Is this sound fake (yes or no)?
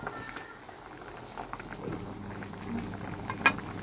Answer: no